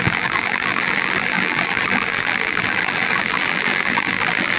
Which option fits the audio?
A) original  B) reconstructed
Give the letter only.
B